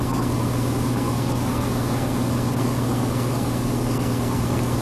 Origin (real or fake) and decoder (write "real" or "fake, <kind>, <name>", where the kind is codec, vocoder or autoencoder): fake, codec, SNAC